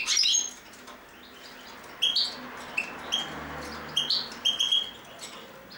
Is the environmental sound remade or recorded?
recorded